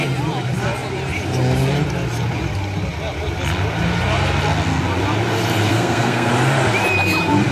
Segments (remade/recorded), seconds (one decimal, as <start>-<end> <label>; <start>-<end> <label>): 0.0-5.7 recorded; 5.7-6.3 remade; 6.3-7.5 recorded

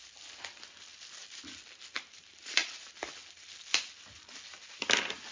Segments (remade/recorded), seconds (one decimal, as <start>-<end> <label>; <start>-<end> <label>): 0.0-5.3 recorded

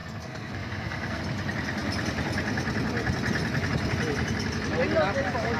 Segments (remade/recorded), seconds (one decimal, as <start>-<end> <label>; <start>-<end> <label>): 0.0-1.2 remade; 1.2-5.6 recorded

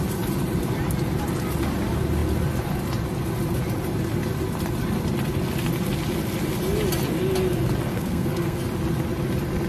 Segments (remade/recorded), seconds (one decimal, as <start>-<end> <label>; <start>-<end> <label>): 0.0-7.9 recorded; 7.9-8.6 remade; 8.6-9.7 recorded

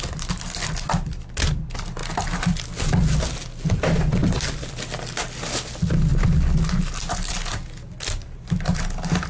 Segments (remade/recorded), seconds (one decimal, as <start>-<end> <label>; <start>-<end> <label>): 0.0-9.3 recorded